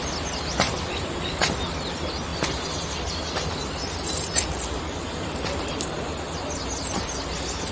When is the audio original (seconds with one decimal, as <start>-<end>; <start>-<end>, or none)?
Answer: 0.0-7.7